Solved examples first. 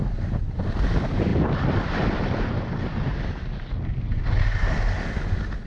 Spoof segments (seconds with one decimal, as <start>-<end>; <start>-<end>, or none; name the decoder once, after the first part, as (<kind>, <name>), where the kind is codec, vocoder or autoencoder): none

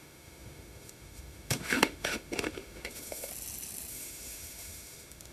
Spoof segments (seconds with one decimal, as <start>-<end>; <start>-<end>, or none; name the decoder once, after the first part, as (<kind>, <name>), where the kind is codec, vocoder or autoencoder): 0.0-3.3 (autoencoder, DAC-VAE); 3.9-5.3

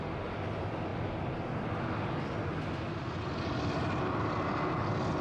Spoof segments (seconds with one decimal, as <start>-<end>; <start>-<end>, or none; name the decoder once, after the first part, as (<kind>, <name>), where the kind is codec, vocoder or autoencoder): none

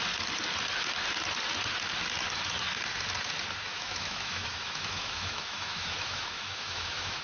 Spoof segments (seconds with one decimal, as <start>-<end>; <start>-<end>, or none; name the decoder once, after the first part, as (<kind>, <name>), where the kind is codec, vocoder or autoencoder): 3.7-7.2 (autoencoder, DAC-VAE)